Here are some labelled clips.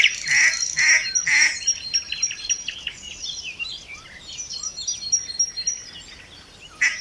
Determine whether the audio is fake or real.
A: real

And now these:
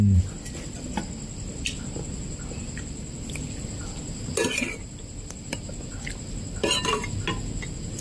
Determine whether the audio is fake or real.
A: real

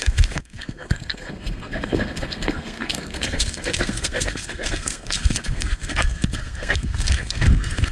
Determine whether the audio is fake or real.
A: fake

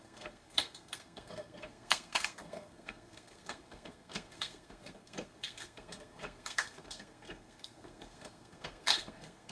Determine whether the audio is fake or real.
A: fake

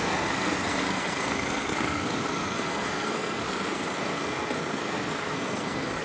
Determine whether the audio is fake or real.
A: fake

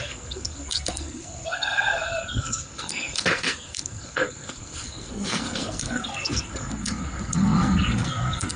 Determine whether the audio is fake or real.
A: fake